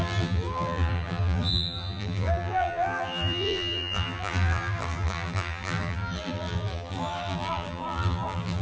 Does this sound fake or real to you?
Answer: fake